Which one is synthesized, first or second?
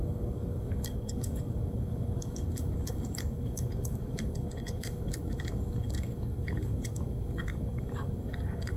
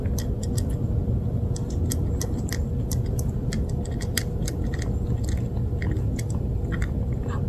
first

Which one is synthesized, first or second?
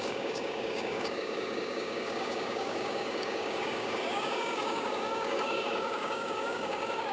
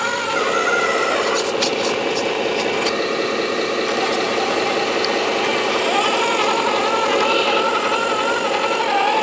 first